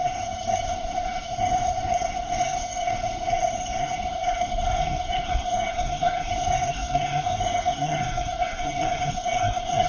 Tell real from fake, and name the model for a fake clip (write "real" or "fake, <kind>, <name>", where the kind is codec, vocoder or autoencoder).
fake, codec, SNAC